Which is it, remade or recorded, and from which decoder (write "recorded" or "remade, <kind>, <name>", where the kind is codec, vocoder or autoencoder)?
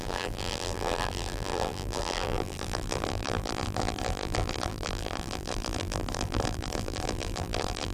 remade, vocoder, BigVGAN v2